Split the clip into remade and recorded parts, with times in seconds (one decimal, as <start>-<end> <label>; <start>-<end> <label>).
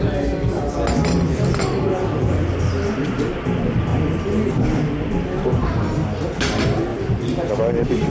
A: 0.0-8.1 recorded